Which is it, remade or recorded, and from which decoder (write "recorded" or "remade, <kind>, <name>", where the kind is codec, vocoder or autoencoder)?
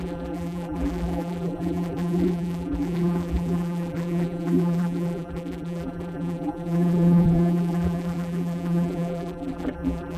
remade, vocoder, BigVGAN v2